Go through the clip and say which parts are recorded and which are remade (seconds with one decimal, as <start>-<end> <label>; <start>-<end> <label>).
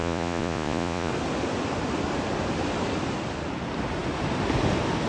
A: 0.0-1.1 remade; 1.1-5.1 recorded